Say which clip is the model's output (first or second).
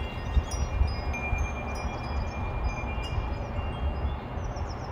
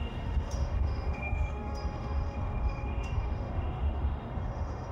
second